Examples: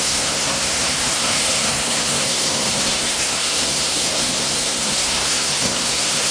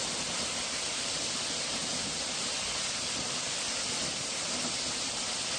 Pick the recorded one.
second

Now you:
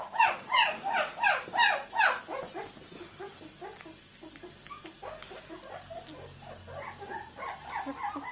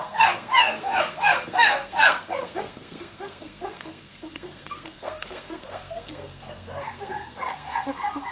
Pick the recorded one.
first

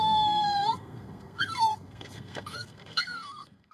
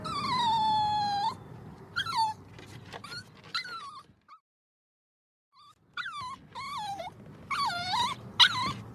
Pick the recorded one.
second